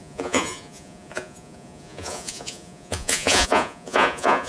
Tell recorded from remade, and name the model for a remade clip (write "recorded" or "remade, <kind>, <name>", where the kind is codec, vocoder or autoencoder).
remade, vocoder, Vocos